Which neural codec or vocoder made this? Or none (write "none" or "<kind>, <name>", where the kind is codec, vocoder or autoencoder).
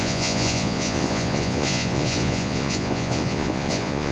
vocoder, Vocos